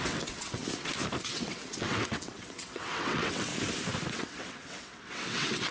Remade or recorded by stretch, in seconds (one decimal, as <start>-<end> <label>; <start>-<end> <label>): 0.0-0.6 remade; 0.6-1.2 recorded; 1.2-3.5 remade; 3.5-4.1 recorded; 4.1-5.7 remade

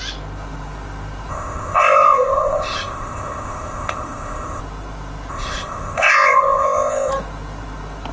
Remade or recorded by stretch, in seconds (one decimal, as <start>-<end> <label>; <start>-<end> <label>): 0.0-1.3 recorded; 1.3-4.6 remade; 4.6-5.3 recorded; 5.3-7.1 remade; 7.1-8.1 recorded

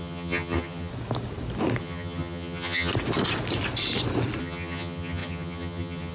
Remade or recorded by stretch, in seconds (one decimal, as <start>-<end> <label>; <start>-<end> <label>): 0.0-0.9 remade; 0.9-1.8 recorded; 1.8-2.9 remade; 2.9-4.4 recorded; 4.4-6.1 remade

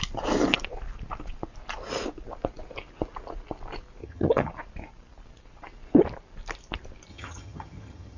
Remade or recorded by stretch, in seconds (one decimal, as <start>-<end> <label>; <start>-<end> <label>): 0.0-4.0 recorded; 4.0-4.5 remade; 4.5-7.1 recorded; 7.1-8.2 remade

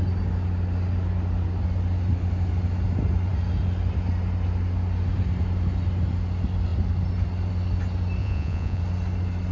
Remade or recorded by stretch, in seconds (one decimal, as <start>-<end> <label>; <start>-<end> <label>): 0.0-8.2 recorded; 8.2-8.8 remade; 8.8-9.5 recorded

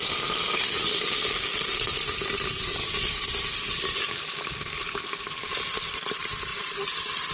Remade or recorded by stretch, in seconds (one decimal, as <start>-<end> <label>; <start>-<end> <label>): 0.0-7.3 recorded

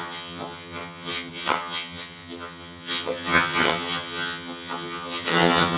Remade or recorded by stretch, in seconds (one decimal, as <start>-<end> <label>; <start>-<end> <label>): 0.0-5.8 remade